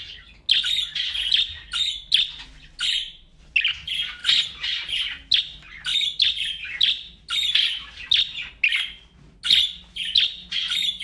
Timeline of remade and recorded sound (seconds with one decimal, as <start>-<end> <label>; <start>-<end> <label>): 0.0-11.0 recorded

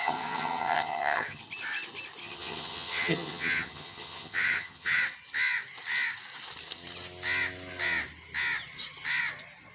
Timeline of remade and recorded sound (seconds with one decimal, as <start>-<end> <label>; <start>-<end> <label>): 0.0-1.4 remade; 1.4-2.2 recorded; 2.2-5.0 remade; 5.0-9.7 recorded

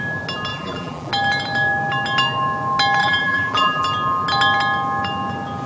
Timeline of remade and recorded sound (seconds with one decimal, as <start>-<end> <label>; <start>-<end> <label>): 0.0-0.5 recorded; 0.5-1.1 remade; 1.1-3.0 recorded; 3.0-3.8 remade; 3.8-5.7 recorded

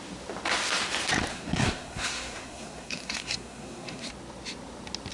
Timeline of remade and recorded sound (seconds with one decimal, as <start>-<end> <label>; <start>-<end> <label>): 0.0-1.3 recorded; 1.3-4.1 remade; 4.1-5.1 recorded